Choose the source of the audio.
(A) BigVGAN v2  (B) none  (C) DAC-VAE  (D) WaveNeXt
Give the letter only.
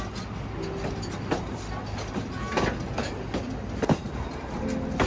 B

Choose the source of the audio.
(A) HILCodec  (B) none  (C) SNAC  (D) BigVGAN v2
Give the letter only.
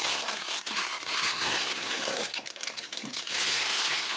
C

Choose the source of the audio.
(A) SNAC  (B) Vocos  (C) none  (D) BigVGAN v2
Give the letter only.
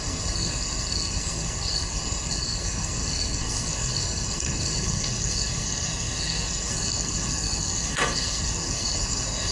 A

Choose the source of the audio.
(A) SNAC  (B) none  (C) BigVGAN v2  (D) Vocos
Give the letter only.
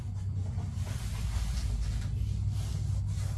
B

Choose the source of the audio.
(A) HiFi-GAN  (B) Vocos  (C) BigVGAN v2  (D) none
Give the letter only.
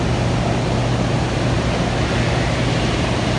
D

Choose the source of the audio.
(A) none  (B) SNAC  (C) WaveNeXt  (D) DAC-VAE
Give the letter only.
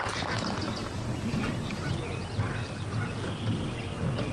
A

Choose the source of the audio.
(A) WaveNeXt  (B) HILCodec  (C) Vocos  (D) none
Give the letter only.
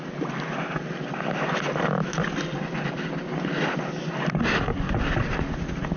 D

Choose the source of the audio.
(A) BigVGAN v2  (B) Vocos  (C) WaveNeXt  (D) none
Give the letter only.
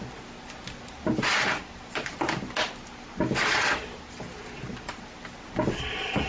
D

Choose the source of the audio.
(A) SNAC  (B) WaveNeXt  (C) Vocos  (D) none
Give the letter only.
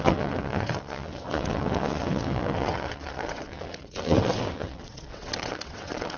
B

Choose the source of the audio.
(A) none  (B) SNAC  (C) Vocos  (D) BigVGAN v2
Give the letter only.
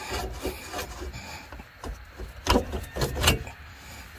A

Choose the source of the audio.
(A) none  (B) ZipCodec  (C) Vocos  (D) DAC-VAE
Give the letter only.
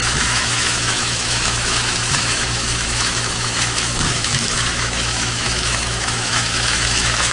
D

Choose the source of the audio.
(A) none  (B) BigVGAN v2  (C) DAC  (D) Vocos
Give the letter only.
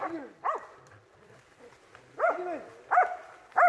B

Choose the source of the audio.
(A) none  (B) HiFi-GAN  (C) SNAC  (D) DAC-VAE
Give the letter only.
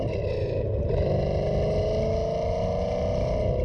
A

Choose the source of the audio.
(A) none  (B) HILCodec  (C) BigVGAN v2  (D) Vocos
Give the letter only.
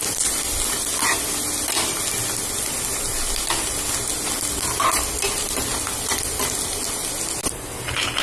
A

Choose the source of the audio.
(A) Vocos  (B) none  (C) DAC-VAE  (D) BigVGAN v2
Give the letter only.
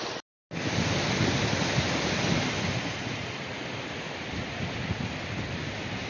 B